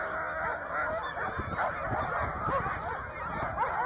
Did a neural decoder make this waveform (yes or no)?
no